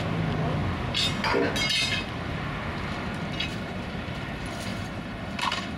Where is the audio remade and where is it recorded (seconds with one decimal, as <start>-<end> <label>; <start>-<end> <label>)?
0.0-3.5 recorded; 3.5-4.2 remade; 4.2-4.7 recorded; 4.7-5.3 remade; 5.3-5.8 recorded